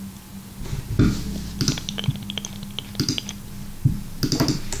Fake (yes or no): no